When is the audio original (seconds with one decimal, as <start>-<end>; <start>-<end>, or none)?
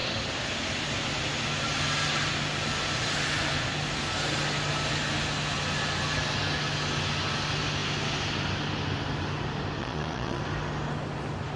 0.0-9.8; 10.4-11.6